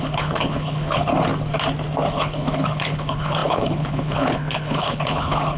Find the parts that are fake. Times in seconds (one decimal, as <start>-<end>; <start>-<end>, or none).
0.0-1.1; 2.1-5.6